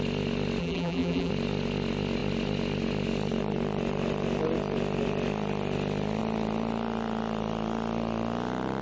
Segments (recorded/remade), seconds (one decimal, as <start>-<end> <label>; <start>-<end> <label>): 0.0-0.6 recorded; 0.6-1.3 remade; 1.3-8.8 recorded